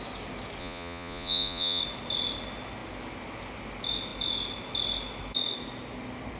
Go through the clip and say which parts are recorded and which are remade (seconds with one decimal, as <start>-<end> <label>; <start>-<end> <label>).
0.0-0.6 recorded; 0.6-1.8 remade; 1.8-6.4 recorded